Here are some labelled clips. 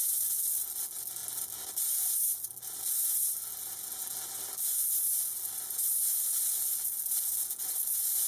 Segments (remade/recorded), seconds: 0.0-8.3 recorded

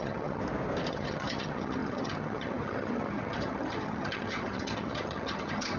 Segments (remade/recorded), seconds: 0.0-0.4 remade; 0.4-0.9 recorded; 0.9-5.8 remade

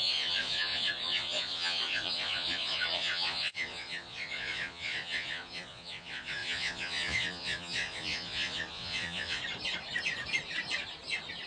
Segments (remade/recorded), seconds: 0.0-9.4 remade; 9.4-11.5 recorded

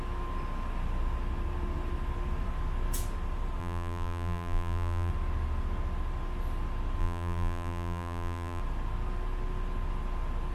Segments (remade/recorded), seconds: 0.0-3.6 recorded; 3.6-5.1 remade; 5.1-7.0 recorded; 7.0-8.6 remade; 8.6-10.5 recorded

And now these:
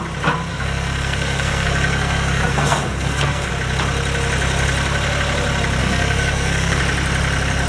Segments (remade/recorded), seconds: 0.0-0.5 recorded; 0.5-3.5 remade; 3.5-5.8 recorded; 5.8-6.8 remade; 6.8-7.7 recorded